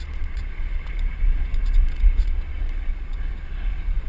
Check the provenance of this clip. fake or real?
fake